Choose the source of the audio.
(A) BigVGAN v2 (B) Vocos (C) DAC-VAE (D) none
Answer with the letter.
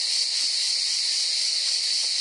D